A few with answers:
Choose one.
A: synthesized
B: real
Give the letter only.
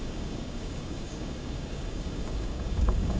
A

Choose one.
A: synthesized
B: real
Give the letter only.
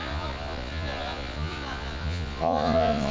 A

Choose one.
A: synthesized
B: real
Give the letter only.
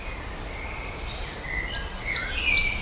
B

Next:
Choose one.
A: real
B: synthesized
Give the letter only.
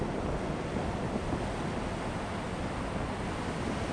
A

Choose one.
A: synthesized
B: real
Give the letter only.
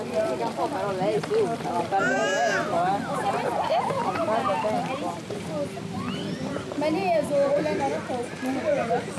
B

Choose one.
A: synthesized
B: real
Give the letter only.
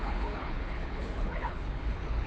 A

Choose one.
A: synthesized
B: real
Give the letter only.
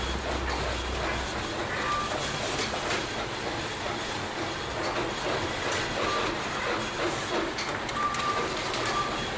B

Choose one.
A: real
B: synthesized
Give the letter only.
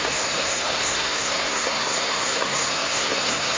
B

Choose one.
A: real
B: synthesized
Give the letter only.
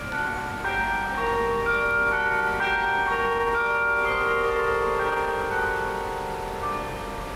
A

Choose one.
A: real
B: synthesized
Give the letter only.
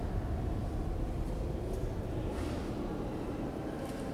A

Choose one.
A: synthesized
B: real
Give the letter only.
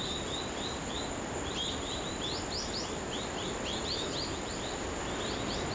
B